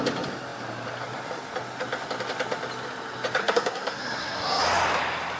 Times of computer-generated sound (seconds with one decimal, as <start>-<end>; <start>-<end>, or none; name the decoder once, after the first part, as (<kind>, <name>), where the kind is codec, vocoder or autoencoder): 3.4-4.6 (codec, SNAC)